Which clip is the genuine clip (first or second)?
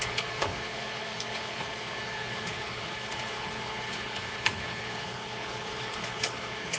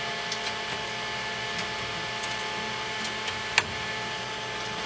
second